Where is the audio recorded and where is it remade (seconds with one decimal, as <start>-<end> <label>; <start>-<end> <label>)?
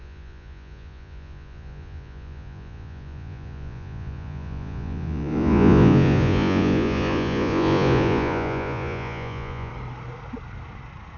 0.0-9.7 remade; 9.7-11.2 recorded